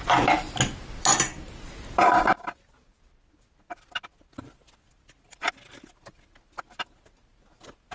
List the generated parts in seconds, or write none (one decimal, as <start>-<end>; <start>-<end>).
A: none